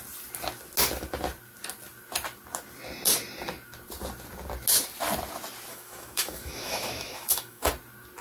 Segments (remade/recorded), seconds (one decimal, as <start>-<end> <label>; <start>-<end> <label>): 0.0-5.7 recorded; 5.7-7.7 remade; 7.7-8.2 recorded